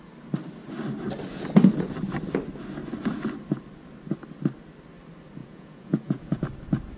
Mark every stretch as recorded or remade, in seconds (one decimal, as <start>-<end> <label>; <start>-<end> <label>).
0.0-5.4 recorded; 5.4-6.4 remade; 6.4-7.0 recorded